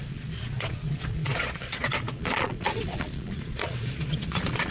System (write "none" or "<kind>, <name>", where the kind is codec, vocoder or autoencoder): vocoder, Vocos